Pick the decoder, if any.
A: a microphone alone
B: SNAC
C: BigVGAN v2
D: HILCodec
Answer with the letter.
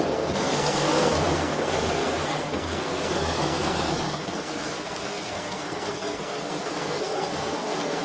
B